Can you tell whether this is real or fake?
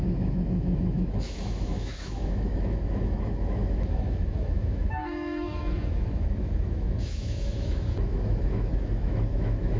fake